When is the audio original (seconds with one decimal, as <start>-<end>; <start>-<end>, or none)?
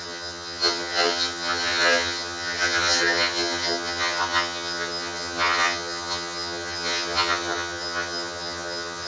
none